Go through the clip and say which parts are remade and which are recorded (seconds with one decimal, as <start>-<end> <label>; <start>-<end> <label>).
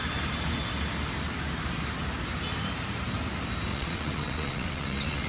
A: 0.0-3.7 recorded; 3.7-5.3 remade